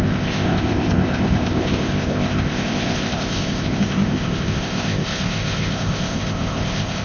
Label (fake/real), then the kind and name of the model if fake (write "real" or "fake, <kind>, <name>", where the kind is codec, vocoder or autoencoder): fake, codec, ZipCodec